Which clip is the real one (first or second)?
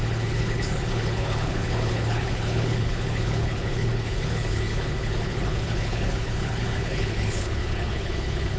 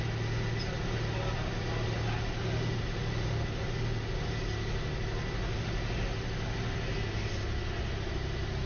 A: second